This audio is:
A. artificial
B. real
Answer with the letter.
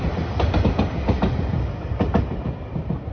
B